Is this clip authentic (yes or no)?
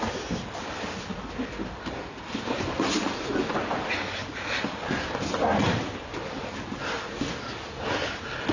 yes